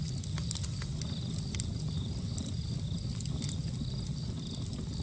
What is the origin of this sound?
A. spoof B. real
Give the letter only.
B